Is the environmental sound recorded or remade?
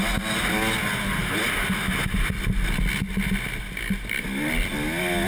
recorded